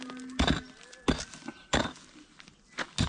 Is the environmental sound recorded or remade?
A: recorded